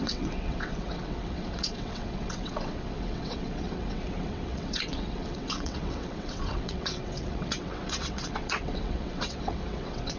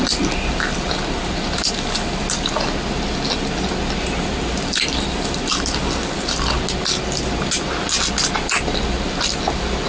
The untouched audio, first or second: second